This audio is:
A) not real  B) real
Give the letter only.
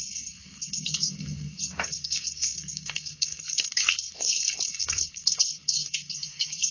A